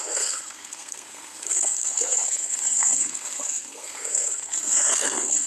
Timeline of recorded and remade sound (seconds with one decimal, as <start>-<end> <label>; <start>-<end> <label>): 0.0-5.5 remade